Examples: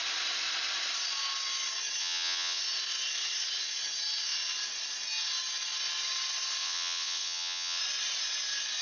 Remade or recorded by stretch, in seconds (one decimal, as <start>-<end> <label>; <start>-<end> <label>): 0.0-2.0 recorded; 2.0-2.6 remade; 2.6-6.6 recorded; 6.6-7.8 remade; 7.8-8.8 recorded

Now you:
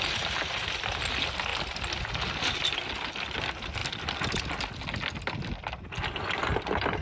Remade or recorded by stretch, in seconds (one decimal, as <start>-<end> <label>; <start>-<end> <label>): 0.0-7.0 recorded

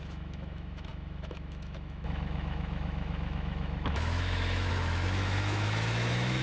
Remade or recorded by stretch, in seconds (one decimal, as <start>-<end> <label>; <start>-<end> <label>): 0.0-6.4 remade

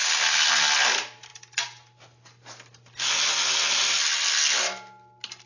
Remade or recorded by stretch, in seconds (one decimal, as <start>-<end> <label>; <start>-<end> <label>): 0.0-5.5 recorded

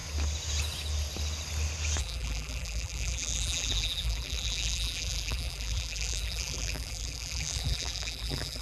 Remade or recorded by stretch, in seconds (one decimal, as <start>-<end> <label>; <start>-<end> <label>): 0.0-2.0 recorded; 2.0-8.6 remade

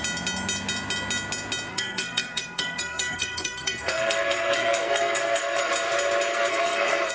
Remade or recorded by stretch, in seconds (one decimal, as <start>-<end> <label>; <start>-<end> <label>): 0.0-1.7 recorded; 1.7-5.7 remade; 5.7-6.3 recorded; 6.3-7.1 remade

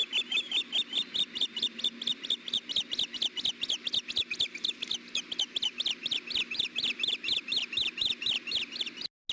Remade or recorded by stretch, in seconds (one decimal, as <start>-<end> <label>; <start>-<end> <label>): 0.0-9.3 recorded